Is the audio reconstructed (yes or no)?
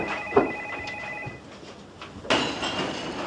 no